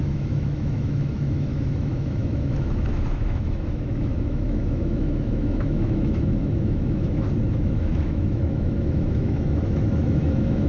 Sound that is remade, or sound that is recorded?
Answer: remade